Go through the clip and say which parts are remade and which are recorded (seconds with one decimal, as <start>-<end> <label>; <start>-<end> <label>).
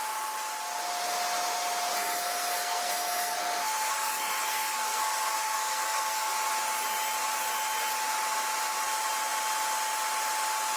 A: 0.0-1.9 recorded; 1.9-6.3 remade; 6.3-10.8 recorded